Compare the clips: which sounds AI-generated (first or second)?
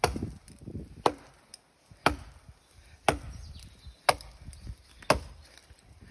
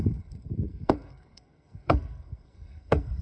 second